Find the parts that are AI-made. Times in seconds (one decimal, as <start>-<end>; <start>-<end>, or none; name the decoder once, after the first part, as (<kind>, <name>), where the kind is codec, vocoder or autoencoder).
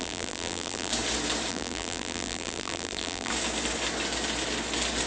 0.0-0.9 (vocoder, BigVGAN v2); 1.5-3.3